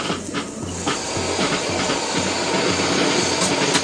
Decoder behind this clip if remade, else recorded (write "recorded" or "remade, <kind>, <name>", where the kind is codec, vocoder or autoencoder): recorded